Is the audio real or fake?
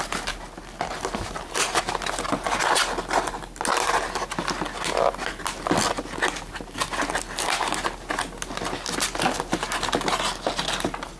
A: real